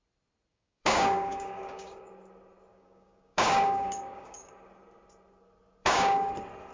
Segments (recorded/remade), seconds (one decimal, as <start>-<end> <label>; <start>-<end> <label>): 0.0-0.5 recorded; 0.5-2.1 remade; 2.1-2.7 recorded; 2.7-4.5 remade; 4.5-5.8 recorded; 5.8-6.3 remade; 6.3-6.7 recorded